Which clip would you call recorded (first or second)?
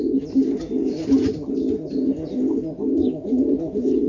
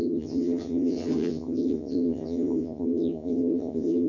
first